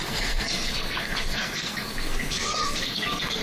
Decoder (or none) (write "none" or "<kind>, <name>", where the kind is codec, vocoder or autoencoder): codec, SNAC